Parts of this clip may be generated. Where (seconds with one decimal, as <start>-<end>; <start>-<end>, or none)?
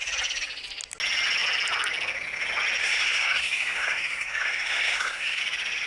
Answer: 2.8-5.4